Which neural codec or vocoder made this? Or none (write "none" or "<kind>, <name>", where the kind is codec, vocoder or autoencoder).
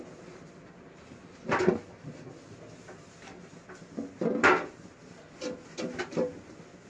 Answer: none